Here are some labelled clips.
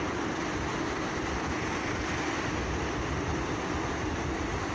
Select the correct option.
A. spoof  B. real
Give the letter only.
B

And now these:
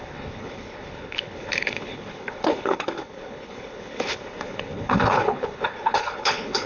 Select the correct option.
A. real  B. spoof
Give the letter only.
B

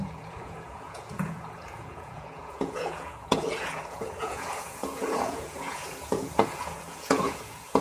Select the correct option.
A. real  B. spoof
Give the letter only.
B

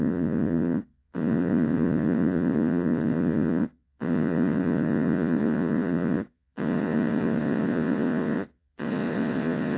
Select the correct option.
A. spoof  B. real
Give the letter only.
A